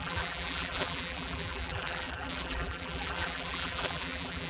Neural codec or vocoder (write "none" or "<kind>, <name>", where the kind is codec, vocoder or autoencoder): vocoder, BigVGAN v2